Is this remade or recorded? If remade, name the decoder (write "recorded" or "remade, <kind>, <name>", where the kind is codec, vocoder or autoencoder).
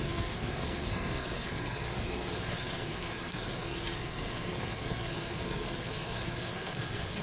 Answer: remade, codec, SNAC